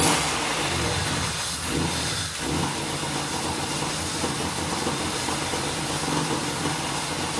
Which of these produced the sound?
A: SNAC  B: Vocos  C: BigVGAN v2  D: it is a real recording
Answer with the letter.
D